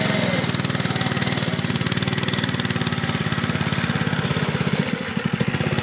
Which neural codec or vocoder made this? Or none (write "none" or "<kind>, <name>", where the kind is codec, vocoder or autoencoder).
none